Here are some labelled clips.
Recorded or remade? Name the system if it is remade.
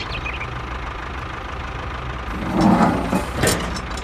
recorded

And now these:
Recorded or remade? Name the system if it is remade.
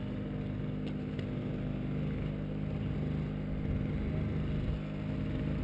recorded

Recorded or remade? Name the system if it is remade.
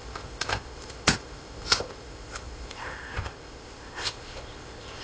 remade, codec, ZipCodec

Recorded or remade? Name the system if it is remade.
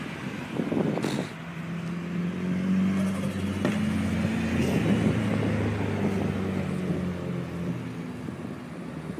recorded